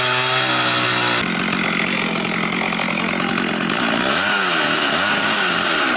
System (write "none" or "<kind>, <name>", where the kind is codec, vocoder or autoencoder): none